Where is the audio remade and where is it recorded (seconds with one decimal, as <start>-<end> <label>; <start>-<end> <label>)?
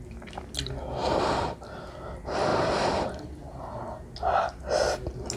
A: 0.0-2.5 recorded; 2.5-3.1 remade; 3.1-5.4 recorded